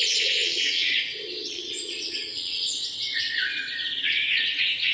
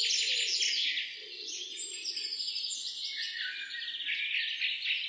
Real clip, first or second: second